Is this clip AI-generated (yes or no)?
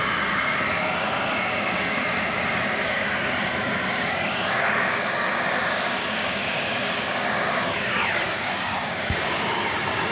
yes